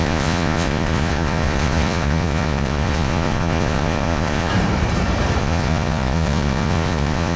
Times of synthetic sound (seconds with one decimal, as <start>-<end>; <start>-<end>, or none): 0.0-4.5; 5.4-7.4

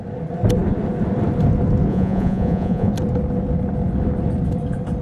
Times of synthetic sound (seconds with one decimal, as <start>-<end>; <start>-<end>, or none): 1.9-2.9

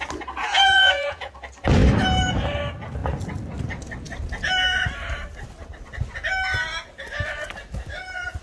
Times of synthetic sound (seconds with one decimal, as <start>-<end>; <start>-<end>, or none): 0.4-1.3

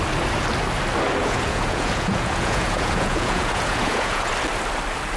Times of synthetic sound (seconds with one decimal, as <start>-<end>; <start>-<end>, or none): 1.2-4.3

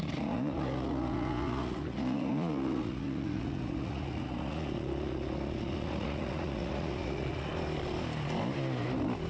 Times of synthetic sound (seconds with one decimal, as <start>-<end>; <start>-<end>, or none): 0.0-7.5